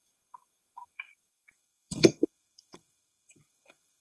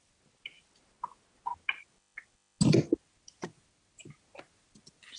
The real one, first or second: second